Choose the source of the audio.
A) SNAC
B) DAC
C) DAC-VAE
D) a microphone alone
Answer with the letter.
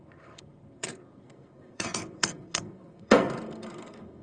A